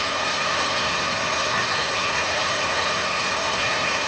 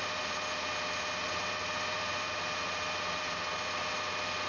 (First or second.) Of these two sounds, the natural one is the second